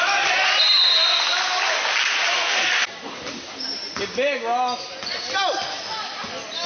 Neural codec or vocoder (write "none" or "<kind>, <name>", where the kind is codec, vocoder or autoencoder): none